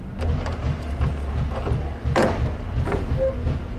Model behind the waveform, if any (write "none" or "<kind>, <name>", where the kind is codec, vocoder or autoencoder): none